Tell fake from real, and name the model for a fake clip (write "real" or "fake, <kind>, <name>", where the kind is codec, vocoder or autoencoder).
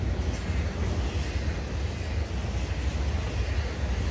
real